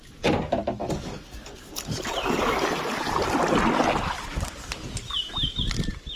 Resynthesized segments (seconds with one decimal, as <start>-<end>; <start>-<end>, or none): 0.8-1.5